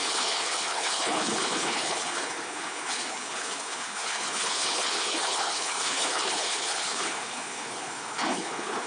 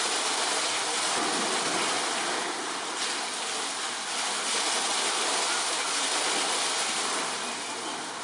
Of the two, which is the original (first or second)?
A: second